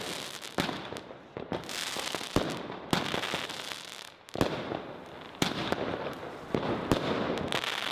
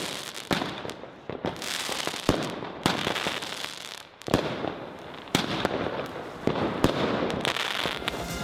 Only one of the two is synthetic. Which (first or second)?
second